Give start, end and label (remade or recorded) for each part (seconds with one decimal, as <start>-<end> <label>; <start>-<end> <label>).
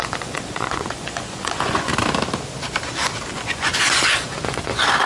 0.0-1.9 remade; 1.9-3.3 recorded; 3.3-5.1 remade